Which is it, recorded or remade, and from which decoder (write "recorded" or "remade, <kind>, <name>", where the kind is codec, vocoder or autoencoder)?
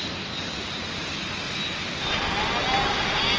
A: recorded